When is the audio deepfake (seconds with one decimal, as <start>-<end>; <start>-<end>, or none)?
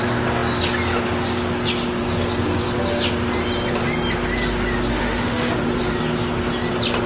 4.9-5.5